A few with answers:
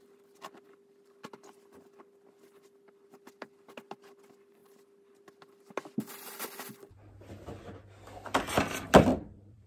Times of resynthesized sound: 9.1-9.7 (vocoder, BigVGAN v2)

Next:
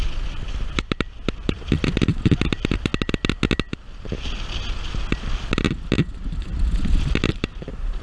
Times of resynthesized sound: 0.0-2.9 (vocoder, BigVGAN v2); 7.3-8.0

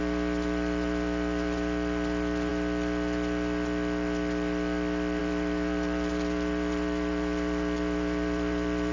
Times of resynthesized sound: 0.0-2.5 (vocoder, BigVGAN v2); 5.2-8.9

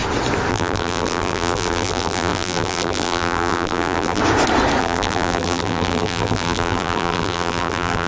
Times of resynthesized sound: 0.5-4.2 (vocoder, BigVGAN v2); 4.8-8.1

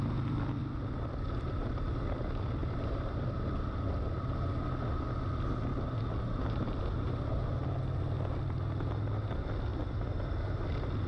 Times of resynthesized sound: 2.6-3.4 (vocoder, BigVGAN v2); 5.7-7.5

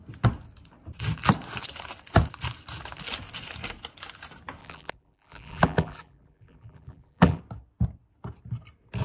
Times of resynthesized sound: 4.6-7.4 (vocoder, BigVGAN v2)